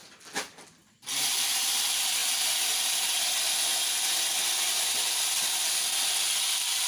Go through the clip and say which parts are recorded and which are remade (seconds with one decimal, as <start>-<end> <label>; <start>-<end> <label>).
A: 0.0-6.9 recorded